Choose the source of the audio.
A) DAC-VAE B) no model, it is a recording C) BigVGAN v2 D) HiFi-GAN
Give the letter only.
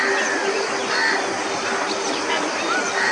B